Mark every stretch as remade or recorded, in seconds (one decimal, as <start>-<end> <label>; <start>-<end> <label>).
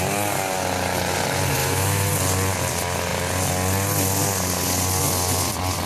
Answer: 0.0-1.6 recorded; 1.6-2.1 remade; 2.1-5.9 recorded